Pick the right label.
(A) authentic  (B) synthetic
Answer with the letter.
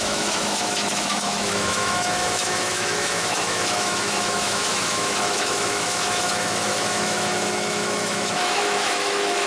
B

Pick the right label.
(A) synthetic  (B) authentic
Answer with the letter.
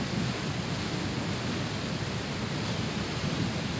B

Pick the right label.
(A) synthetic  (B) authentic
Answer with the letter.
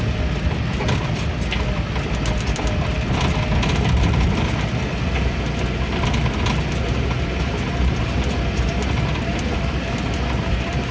B